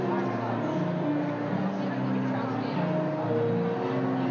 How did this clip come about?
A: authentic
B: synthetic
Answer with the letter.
A